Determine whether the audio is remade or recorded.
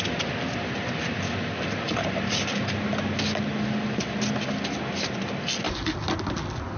recorded